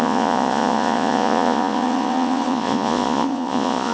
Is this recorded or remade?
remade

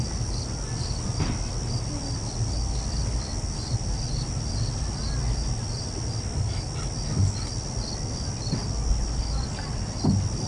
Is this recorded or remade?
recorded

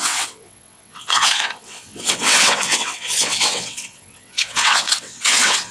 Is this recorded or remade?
remade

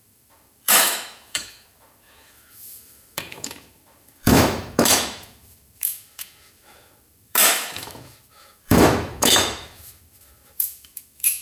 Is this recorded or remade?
remade